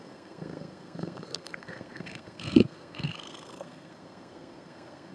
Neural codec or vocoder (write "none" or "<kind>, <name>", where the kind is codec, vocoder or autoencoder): codec, SNAC